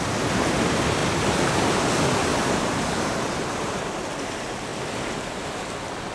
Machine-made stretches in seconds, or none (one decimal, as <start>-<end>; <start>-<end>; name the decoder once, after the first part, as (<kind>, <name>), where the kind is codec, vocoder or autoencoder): 2.3-3.8 (vocoder, BigVGAN v2)